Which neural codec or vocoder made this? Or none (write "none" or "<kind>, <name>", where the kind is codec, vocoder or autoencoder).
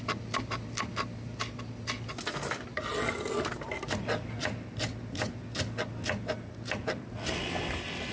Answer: none